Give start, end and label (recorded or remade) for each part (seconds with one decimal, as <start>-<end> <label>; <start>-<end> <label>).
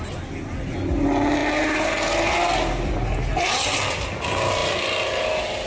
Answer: 0.0-5.7 recorded